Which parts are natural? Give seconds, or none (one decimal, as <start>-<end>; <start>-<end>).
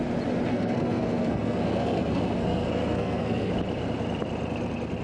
0.0-0.5; 3.5-5.0